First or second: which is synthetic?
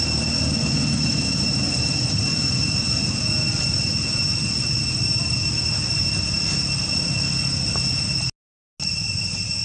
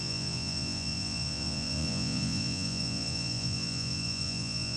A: second